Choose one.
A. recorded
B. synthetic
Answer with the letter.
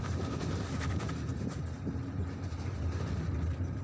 A